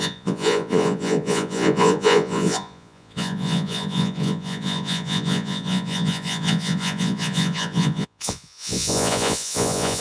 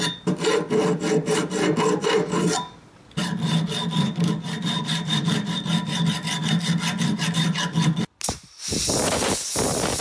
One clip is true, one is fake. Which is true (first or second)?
second